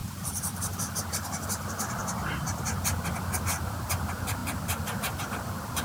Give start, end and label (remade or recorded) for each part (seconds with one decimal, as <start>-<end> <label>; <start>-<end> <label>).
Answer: 0.0-2.0 remade; 2.0-2.7 recorded; 2.7-5.8 remade